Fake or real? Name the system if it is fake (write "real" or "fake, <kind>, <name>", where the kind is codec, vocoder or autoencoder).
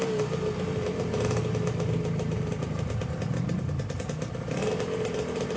real